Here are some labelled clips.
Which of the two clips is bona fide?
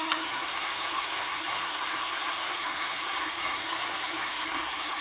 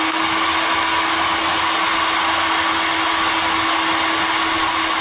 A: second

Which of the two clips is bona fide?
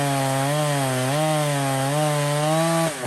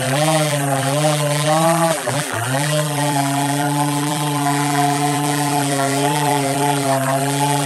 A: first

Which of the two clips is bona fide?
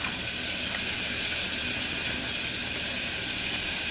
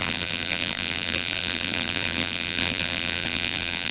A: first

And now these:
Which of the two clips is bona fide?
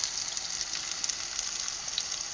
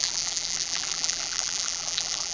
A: first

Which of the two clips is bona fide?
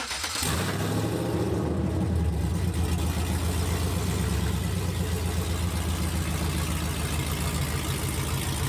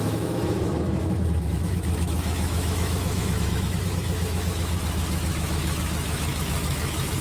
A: first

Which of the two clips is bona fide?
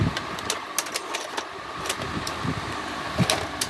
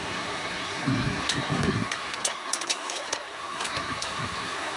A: first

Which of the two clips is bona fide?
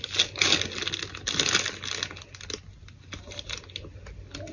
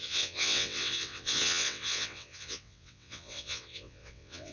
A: first